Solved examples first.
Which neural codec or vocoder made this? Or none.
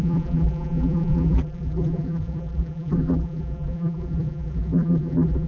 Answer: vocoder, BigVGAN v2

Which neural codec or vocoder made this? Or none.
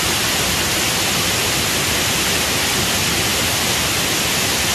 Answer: none